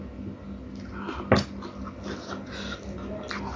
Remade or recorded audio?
recorded